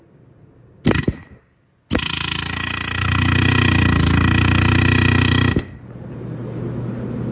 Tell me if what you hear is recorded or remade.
recorded